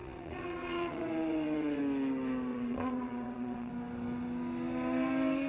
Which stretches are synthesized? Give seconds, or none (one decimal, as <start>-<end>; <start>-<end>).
0.0-1.8; 2.5-3.7